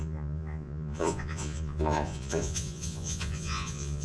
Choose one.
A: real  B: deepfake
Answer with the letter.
B